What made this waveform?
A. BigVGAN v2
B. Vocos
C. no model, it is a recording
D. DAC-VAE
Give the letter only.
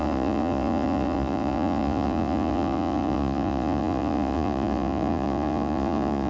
B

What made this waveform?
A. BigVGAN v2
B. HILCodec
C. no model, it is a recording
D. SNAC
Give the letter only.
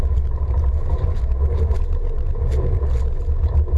A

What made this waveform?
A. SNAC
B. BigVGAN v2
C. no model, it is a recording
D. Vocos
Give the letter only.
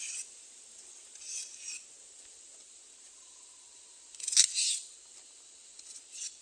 C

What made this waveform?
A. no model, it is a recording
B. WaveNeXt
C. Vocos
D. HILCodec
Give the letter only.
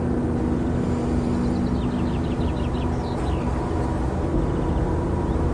A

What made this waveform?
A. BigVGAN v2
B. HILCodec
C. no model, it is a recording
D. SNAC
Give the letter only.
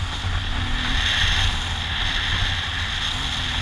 C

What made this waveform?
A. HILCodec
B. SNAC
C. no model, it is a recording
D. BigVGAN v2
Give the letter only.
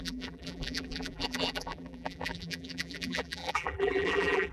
D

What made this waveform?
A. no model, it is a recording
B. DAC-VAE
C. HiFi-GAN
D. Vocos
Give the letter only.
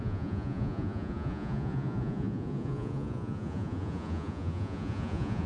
D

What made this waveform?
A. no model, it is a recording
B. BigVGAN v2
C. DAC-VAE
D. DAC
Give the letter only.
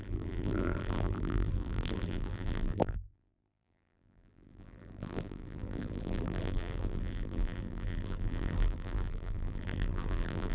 B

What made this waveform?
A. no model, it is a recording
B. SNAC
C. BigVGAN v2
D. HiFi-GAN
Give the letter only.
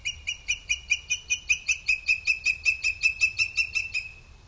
C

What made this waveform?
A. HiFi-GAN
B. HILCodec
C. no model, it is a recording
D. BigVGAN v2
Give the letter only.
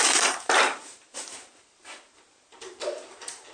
D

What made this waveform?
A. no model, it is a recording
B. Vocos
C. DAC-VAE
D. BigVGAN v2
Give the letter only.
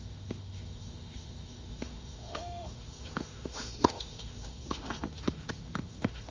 C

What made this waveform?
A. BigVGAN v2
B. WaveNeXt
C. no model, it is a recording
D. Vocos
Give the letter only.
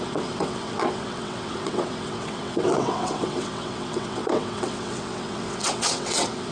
B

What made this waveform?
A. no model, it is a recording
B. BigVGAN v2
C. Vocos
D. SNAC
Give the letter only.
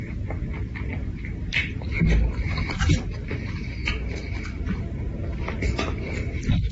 B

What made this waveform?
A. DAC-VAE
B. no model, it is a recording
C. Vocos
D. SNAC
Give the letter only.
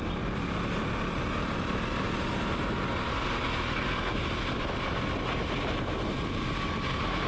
B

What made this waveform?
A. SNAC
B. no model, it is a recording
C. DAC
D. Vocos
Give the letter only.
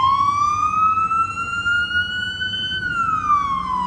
B